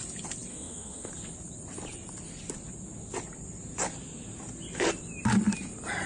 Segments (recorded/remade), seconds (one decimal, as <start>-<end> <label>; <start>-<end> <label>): 0.0-0.5 recorded; 0.5-1.1 remade; 1.1-6.1 recorded